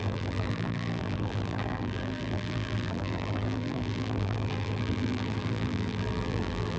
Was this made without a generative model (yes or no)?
no